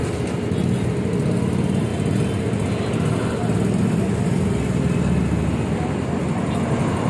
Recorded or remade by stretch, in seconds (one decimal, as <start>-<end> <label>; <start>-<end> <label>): 0.0-7.1 recorded